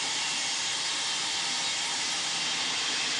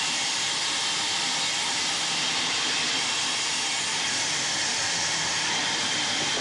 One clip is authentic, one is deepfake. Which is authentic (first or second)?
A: first